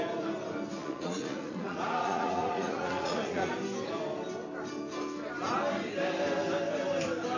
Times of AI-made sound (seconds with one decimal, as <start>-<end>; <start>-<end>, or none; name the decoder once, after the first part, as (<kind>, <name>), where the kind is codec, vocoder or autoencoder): 0.8-3.5 (vocoder, Vocos)